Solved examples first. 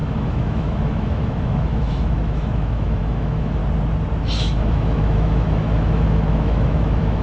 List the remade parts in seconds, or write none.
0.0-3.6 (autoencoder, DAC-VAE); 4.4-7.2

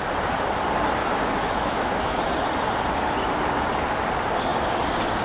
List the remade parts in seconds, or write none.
1.0-2.2 (autoencoder, DAC-VAE)